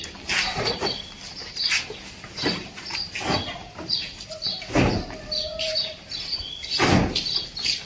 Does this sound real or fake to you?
real